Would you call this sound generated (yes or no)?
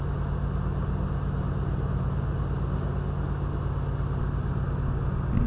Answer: no